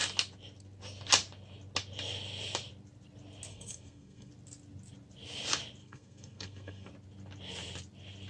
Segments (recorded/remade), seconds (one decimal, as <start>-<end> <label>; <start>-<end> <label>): 0.0-3.5 recorded; 3.5-4.3 remade; 4.3-5.8 recorded; 5.8-6.9 remade; 6.9-8.3 recorded